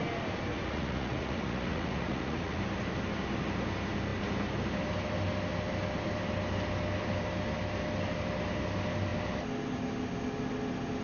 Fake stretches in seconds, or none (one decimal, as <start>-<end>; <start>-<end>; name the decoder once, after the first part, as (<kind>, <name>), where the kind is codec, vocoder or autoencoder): 0.5-2.6 (vocoder, Vocos)